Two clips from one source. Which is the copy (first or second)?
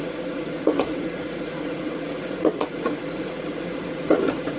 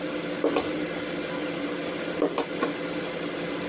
first